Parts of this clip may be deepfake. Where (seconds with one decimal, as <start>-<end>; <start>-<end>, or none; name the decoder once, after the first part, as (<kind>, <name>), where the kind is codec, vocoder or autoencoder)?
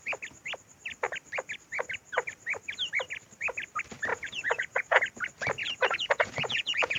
4.1-5.0 (vocoder, Vocos); 5.6-7.0